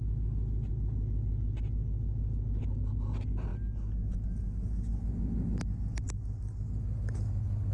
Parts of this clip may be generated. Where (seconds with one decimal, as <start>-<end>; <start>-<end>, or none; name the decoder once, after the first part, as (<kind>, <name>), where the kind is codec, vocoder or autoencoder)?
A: none